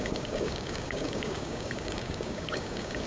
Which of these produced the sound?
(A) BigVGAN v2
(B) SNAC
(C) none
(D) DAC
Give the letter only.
D